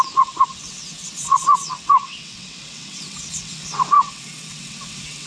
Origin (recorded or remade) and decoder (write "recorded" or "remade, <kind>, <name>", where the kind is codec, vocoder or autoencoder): remade, vocoder, WaveNeXt